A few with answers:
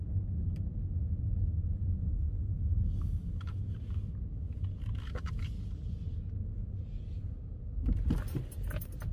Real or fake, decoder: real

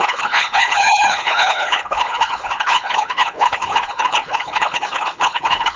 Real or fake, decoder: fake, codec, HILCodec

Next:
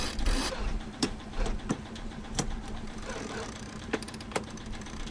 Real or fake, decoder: fake, vocoder, BigVGAN v2